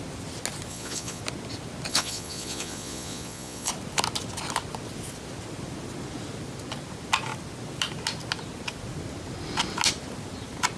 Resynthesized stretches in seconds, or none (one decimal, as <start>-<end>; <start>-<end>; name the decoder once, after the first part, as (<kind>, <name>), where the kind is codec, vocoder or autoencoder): 0.7-1.2 (vocoder, Vocos); 1.9-3.7